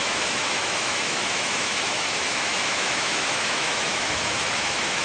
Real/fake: fake